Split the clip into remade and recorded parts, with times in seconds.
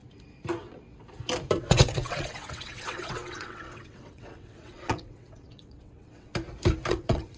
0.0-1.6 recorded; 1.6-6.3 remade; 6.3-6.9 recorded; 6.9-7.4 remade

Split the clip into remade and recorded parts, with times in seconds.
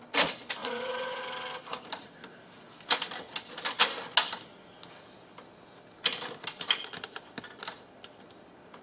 0.0-0.6 recorded; 0.6-1.2 remade; 1.2-8.8 recorded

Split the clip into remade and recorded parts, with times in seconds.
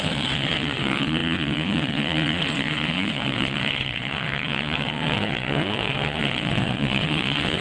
0.0-7.6 remade